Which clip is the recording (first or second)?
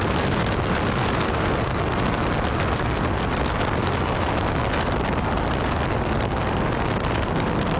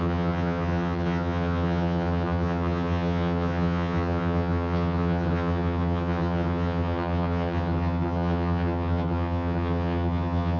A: first